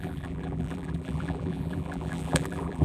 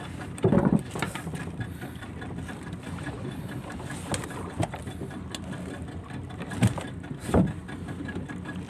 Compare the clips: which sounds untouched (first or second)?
second